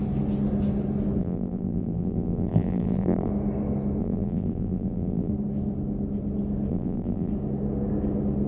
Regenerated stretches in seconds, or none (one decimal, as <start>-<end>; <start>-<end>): 1.2-3.3; 4.0-5.3; 6.7-7.3

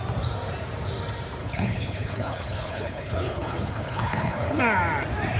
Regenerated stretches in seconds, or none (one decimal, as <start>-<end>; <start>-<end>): 1.4-4.6

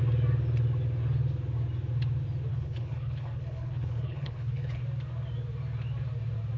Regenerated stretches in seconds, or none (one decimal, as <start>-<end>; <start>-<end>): 2.5-4.8